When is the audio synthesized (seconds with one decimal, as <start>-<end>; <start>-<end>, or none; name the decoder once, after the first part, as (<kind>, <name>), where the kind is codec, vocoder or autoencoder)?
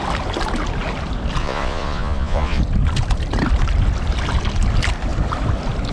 1.4-2.6 (vocoder, Vocos)